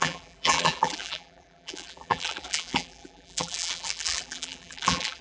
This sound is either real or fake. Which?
fake